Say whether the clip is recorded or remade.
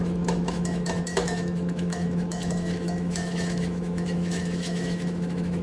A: remade